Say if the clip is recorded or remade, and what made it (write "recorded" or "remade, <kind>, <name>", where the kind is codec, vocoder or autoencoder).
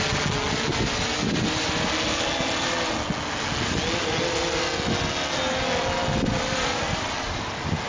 recorded